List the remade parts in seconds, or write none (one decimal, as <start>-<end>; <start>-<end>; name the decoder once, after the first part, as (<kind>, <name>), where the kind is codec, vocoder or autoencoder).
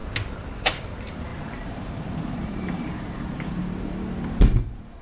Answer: 0.6-5.0 (vocoder, BigVGAN v2)